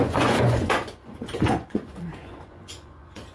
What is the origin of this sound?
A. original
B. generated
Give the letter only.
B